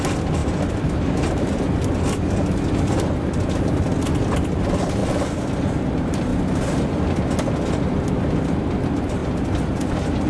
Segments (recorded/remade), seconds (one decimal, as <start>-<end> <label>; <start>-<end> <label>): 0.0-0.4 recorded; 0.4-3.2 remade; 3.2-9.2 recorded; 9.2-9.9 remade; 9.9-10.3 recorded